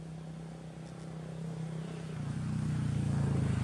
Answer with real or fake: real